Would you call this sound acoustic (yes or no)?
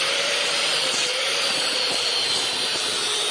no